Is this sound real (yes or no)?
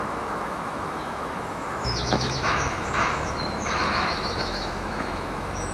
no